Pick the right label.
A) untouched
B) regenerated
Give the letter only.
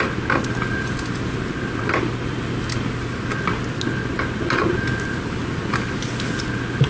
A